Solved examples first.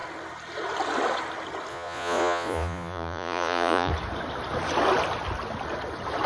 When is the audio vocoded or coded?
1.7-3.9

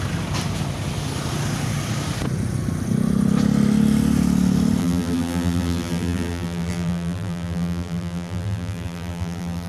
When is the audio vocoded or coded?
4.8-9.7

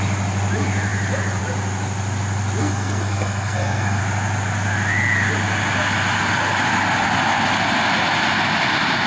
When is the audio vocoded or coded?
2.6-4.0